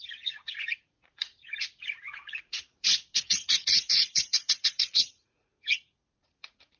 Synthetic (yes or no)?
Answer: yes